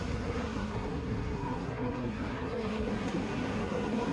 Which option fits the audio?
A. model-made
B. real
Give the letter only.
A